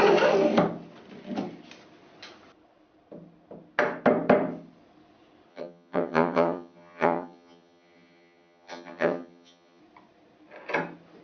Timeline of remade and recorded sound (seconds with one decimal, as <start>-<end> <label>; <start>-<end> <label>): 0.0-5.5 recorded; 5.5-9.8 remade; 9.8-11.2 recorded